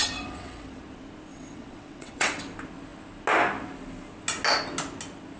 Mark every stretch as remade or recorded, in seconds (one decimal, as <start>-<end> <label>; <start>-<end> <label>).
0.0-0.8 remade; 0.8-1.3 recorded; 1.3-2.4 remade; 2.4-5.4 recorded